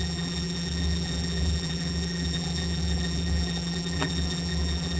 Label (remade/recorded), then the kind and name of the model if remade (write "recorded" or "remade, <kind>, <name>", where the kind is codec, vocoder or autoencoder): remade, vocoder, BigVGAN v2